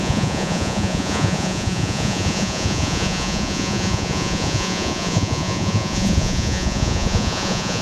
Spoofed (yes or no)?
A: yes